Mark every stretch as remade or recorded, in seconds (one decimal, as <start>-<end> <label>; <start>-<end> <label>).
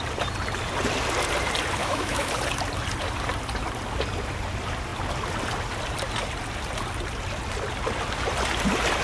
0.0-1.8 recorded; 1.8-2.3 remade; 2.3-9.0 recorded